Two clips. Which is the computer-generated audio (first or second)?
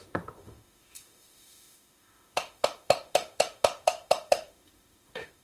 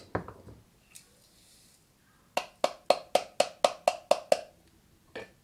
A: first